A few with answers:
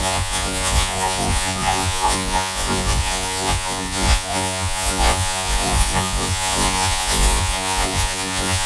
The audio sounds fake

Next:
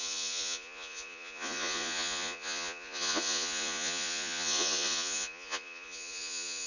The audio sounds fake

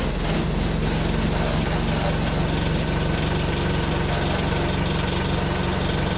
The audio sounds real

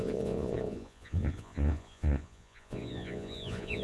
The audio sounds fake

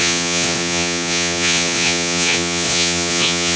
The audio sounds fake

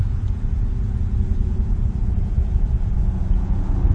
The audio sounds fake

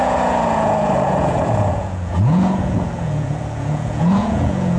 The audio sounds fake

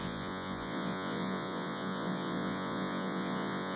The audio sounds fake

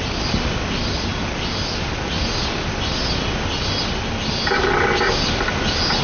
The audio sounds real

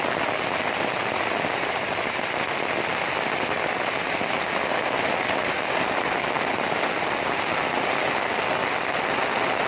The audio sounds real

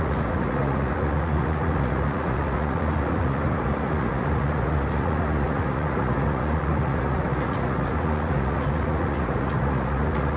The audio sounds fake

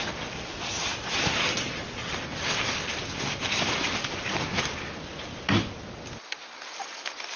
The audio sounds real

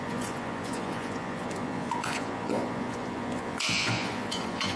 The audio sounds fake